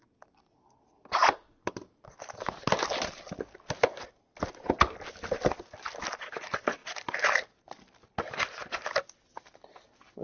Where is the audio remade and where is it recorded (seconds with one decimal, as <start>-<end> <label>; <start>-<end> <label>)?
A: 0.0-10.2 recorded